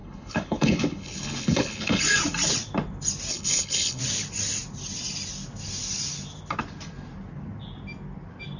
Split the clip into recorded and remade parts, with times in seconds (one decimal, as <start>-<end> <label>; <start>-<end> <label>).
0.0-2.0 remade; 2.0-3.3 recorded; 3.3-4.0 remade; 4.0-8.6 recorded